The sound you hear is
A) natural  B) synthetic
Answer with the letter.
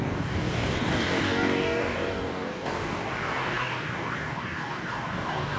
B